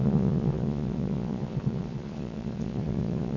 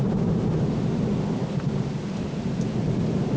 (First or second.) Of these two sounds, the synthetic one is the first